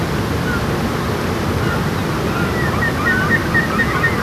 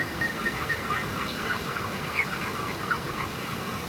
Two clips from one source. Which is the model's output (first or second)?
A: second